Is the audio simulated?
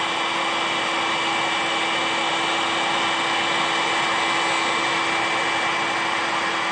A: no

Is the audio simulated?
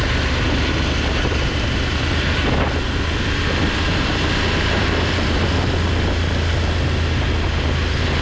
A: no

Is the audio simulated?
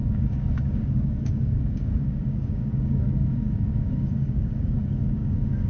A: yes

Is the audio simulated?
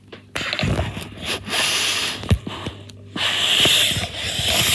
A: no